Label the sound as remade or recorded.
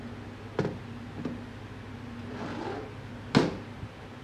recorded